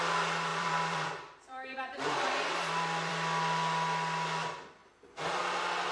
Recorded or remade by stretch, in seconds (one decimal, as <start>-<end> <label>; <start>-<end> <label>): 0.0-0.5 recorded; 0.5-3.1 remade; 3.1-4.8 recorded; 4.8-5.4 remade; 5.4-5.9 recorded